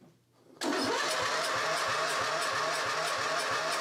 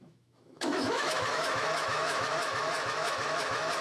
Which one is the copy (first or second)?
second